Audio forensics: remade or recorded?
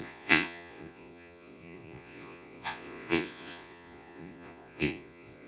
remade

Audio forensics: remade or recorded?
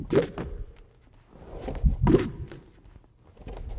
recorded